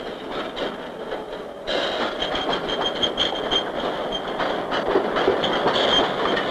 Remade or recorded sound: recorded